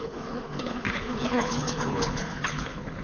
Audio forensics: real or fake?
fake